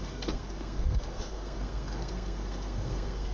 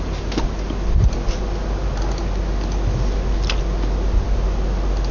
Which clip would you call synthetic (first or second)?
first